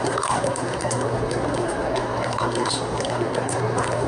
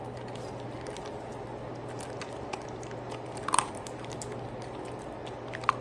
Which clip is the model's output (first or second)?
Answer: first